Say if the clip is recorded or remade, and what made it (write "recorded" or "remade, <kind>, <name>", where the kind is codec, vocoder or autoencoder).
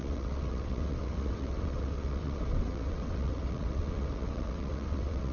remade, vocoder, WaveNeXt